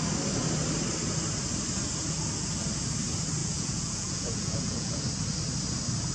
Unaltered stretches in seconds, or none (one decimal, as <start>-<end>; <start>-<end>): 0.0-3.4; 5.0-6.1